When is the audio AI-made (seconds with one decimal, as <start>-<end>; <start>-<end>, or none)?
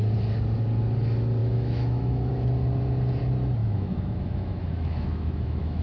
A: 1.4-2.3; 3.6-5.8